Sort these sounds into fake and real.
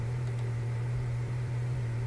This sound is fake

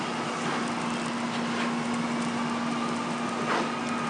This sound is real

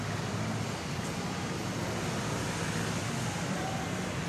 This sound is real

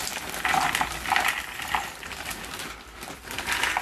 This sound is real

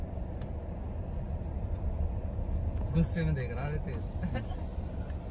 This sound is real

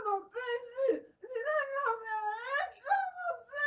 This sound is real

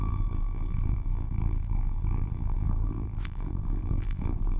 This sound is fake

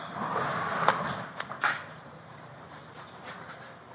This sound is fake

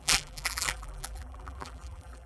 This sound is fake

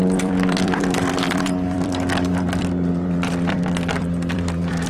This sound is fake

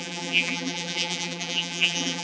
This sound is fake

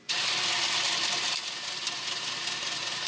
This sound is real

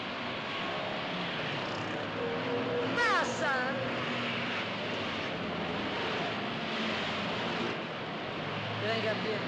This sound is real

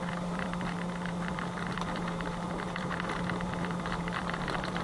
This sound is fake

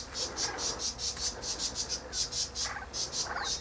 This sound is real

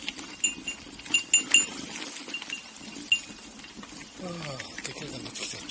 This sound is real